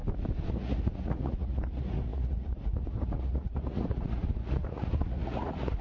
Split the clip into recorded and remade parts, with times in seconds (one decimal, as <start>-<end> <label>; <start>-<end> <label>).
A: 0.0-0.5 recorded; 0.5-5.8 remade